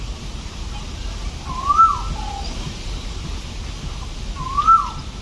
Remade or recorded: recorded